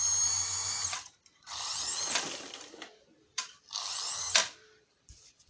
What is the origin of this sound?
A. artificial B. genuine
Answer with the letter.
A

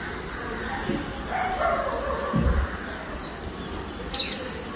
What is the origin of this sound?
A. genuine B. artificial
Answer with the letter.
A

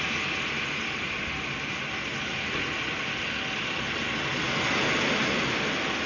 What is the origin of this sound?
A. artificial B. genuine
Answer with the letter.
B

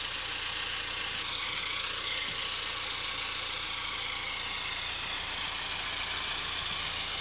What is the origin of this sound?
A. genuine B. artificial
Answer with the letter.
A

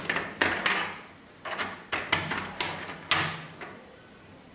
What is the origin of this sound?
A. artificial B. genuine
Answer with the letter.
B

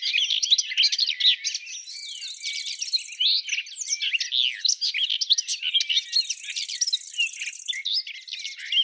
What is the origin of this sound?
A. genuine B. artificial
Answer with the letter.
A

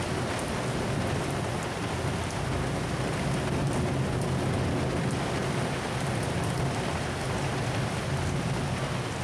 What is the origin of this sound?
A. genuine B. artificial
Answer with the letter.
A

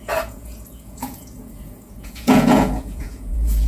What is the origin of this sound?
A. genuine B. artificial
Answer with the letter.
B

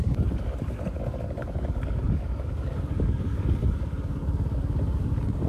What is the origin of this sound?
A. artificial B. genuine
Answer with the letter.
A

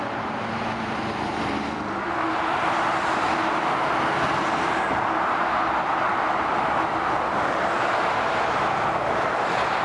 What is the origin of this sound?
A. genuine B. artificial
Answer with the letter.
A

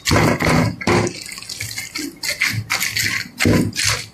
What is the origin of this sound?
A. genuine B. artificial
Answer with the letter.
A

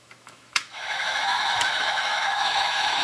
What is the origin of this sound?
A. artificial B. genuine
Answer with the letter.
A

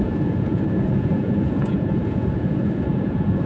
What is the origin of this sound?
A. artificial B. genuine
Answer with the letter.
A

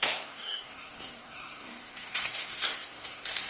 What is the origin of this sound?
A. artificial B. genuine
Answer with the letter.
A